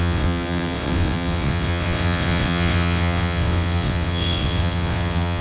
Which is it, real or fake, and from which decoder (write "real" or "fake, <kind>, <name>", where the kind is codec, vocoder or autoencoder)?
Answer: fake, vocoder, WaveNeXt